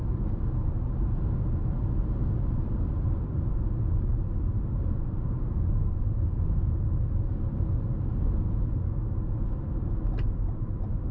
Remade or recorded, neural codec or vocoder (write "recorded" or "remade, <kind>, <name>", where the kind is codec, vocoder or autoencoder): recorded